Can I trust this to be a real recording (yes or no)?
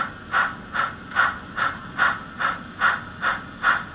yes